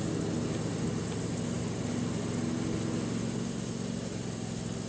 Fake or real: real